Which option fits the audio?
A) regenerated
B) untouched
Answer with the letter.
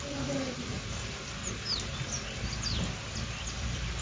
B